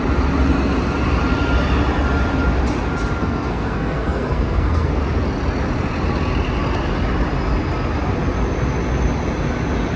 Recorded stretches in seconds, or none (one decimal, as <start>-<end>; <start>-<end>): 0.0-3.2; 5.0-10.0